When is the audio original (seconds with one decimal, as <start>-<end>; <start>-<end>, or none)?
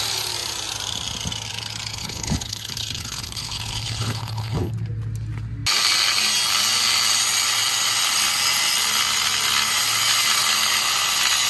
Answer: 0.0-1.9; 4.7-11.5